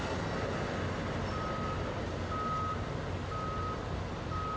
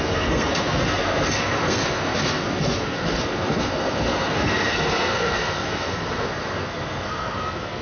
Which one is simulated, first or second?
second